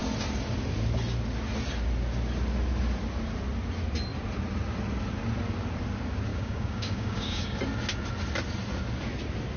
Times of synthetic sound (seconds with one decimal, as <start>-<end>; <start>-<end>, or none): 6.3-7.6